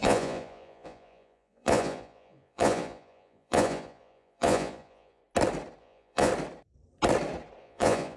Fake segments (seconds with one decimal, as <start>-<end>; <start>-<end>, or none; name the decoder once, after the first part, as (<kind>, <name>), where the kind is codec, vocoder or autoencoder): 0.0-5.2 (vocoder, Vocos); 5.8-6.3; 7.6-8.2